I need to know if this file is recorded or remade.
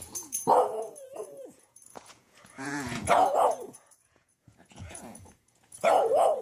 remade